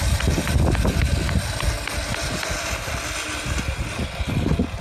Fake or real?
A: real